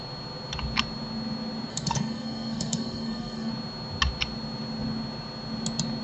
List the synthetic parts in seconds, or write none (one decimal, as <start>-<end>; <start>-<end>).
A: 1.7-3.5